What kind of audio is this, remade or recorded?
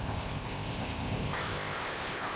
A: remade